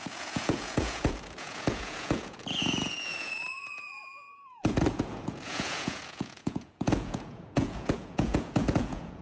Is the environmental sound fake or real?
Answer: fake